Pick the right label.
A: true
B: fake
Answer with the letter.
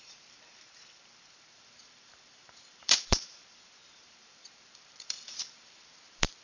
B